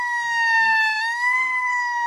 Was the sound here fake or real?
fake